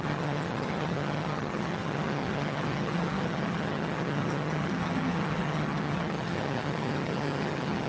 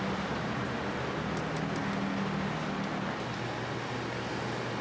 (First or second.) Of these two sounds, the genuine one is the second